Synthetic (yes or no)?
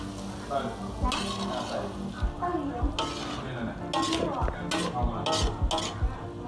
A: no